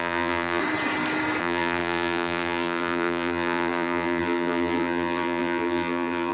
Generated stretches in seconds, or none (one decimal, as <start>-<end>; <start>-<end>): 0.0-0.6; 1.4-6.3